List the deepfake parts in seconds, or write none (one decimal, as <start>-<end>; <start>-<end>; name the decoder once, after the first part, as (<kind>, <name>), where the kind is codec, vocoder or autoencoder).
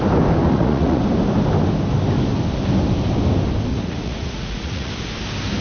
0.4-1.0 (vocoder, Vocos); 3.7-4.9